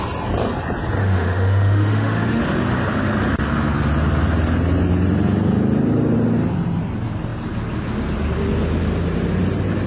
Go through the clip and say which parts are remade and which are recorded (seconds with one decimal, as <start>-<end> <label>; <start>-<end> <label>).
0.0-1.0 recorded; 1.0-2.4 remade; 2.4-9.9 recorded